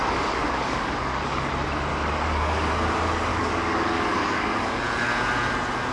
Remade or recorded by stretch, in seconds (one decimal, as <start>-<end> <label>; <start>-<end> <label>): 0.0-1.5 remade; 1.5-1.9 recorded; 1.9-2.7 remade; 2.7-3.3 recorded; 3.3-4.8 remade; 4.8-5.9 recorded